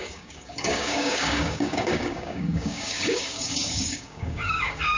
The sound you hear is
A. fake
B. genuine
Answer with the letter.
A